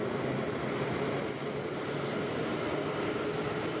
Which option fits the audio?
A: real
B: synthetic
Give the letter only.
A